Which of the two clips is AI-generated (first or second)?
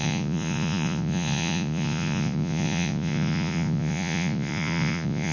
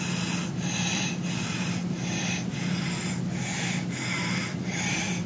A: first